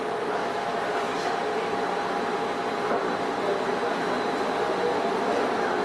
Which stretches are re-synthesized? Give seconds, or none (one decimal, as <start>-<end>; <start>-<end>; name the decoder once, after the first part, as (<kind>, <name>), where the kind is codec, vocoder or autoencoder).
none